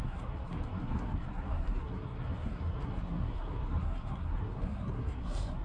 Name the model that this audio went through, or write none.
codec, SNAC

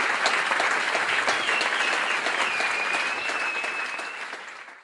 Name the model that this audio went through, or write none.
none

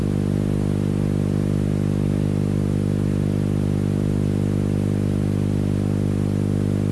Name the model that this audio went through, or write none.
none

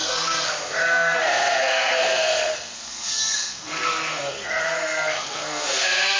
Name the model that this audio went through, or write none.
codec, SNAC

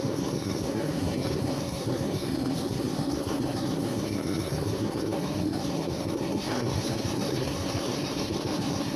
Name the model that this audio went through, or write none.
codec, SNAC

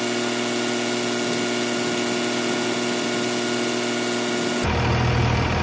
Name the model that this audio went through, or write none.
none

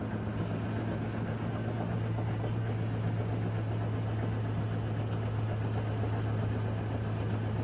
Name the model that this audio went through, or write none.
none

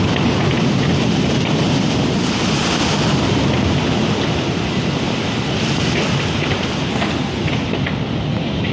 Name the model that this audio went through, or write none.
none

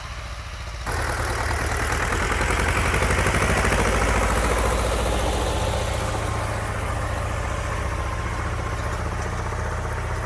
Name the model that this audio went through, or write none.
none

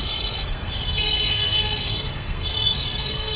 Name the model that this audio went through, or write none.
codec, SNAC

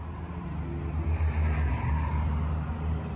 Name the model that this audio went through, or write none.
none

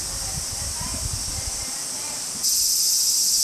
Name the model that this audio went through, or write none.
none